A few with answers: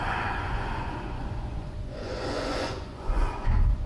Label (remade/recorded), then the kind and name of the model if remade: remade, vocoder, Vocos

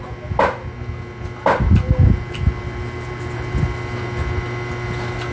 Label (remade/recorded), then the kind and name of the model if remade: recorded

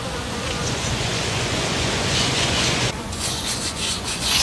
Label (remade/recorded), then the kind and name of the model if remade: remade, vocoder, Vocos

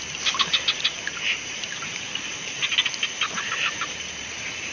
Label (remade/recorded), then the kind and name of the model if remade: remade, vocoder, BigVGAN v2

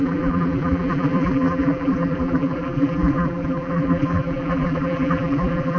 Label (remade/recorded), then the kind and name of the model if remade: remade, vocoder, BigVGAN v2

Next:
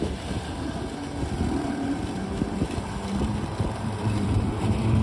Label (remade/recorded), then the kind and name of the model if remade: remade, vocoder, BigVGAN v2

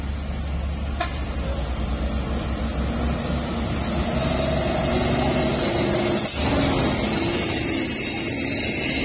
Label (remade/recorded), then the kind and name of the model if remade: recorded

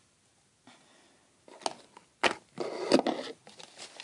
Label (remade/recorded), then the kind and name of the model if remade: recorded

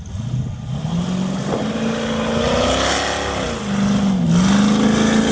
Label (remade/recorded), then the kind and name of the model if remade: recorded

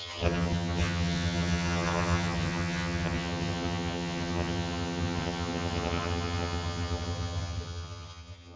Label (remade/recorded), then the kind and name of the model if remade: remade, vocoder, HiFi-GAN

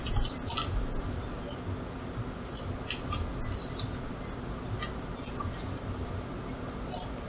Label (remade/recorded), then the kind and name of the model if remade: recorded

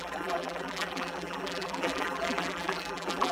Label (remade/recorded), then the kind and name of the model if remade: remade, vocoder, BigVGAN v2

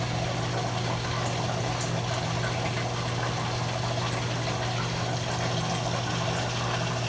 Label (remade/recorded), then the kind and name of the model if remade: recorded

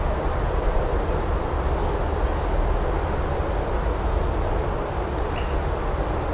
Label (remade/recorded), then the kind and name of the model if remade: recorded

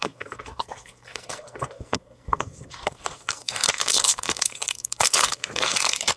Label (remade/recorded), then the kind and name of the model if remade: remade, codec, SNAC